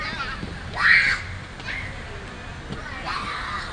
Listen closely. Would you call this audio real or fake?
real